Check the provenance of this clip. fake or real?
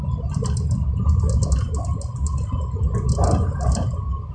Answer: real